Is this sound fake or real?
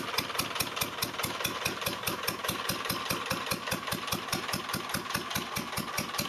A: real